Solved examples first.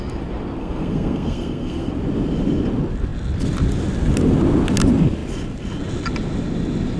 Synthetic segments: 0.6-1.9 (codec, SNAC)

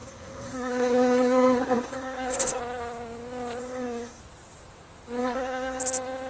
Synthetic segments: 0.0-2.6 (codec, SNAC); 3.6-4.2; 5.2-5.8

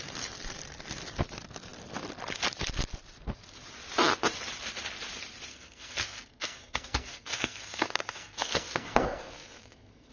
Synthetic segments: 5.5-10.1 (codec, SNAC)